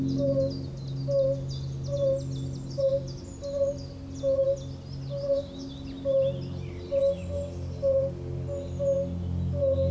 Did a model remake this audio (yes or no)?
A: no